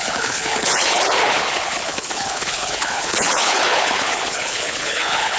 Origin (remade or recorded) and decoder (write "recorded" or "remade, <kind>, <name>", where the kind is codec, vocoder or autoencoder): remade, codec, HILCodec